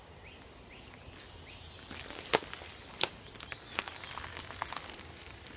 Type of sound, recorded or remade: recorded